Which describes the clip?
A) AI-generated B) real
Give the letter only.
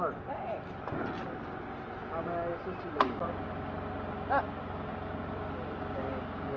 B